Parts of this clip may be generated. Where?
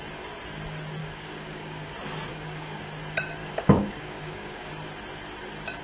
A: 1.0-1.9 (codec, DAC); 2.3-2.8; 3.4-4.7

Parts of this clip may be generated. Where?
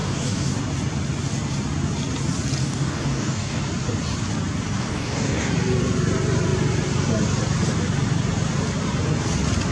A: 0.0-0.6 (codec, DAC); 2.6-3.6; 4.8-5.5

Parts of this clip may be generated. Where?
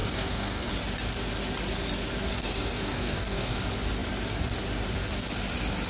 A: 0.0-0.7 (codec, DAC); 2.3-3.6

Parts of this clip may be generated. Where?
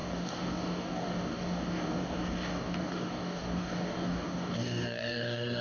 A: 0.0-5.6 (codec, DAC)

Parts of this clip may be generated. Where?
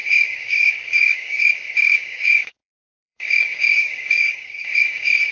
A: 0.0-5.3 (codec, DAC)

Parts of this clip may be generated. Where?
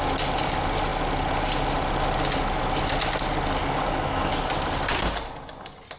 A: 3.6-4.3 (codec, DAC)